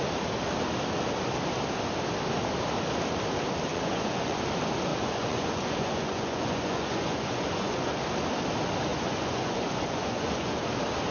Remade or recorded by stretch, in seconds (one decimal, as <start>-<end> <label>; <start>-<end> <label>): 0.0-3.7 recorded; 3.7-4.4 remade; 4.4-4.9 recorded; 4.9-7.9 remade; 7.9-8.9 recorded; 8.9-10.6 remade; 10.6-11.1 recorded

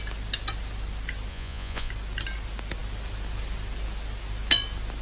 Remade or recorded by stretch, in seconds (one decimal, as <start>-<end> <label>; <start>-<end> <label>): 0.0-1.3 recorded; 1.3-1.9 remade; 1.9-5.0 recorded

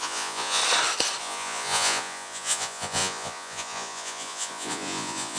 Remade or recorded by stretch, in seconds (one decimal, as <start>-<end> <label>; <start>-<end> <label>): 0.0-0.6 remade; 0.6-1.2 recorded; 1.2-5.4 remade

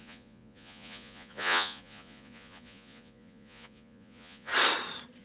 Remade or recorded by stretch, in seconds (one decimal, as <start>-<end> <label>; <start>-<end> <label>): 0.0-4.5 remade; 4.5-5.2 recorded

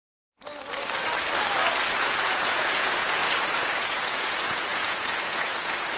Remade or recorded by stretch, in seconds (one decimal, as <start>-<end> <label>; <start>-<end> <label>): 0.0-1.9 recorded; 1.9-6.0 remade

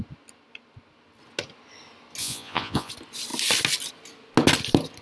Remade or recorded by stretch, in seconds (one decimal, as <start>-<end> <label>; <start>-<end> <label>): 0.0-2.2 recorded; 2.2-2.9 remade; 2.9-5.0 recorded

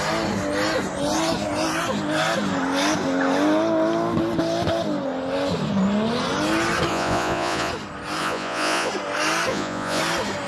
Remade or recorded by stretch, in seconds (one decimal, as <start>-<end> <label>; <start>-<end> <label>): 0.0-6.9 recorded; 6.9-7.7 remade; 7.7-8.2 recorded; 8.2-8.9 remade; 8.9-9.5 recorded; 9.5-10.0 remade; 10.0-10.5 recorded